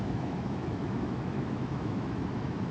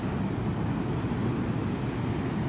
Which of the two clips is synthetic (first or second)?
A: first